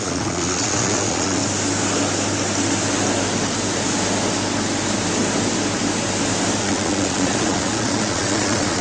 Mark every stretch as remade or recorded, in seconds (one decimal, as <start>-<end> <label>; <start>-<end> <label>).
0.0-1.4 remade; 1.4-6.6 recorded; 6.6-8.8 remade